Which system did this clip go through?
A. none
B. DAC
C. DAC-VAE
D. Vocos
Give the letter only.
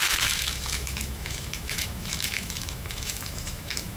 C